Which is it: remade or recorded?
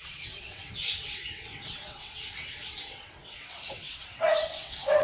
remade